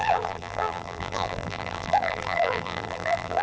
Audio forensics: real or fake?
fake